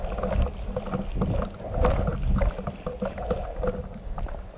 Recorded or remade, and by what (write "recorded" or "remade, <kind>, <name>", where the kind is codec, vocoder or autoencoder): recorded